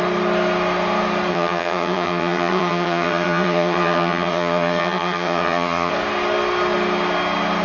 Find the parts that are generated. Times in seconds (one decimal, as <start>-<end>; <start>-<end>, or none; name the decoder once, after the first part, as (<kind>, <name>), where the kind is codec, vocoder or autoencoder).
1.3-5.9 (vocoder, HiFi-GAN)